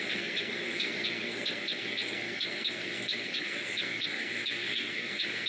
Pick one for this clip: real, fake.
fake